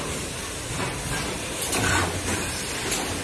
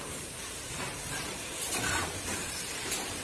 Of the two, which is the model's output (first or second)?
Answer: second